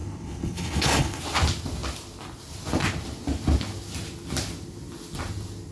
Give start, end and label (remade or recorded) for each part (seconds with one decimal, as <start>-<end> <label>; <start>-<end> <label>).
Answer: 0.0-1.2 remade; 1.2-5.7 recorded